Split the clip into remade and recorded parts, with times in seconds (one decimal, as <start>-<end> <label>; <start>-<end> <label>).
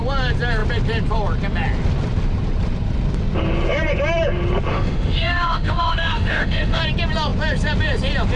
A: 0.0-4.7 recorded; 4.7-6.8 remade; 6.8-8.4 recorded